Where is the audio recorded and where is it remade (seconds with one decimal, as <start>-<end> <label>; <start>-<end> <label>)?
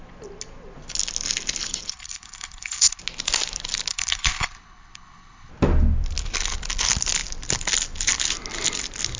0.0-1.9 recorded; 1.9-3.0 remade; 3.0-3.9 recorded; 3.9-5.5 remade; 5.5-9.2 recorded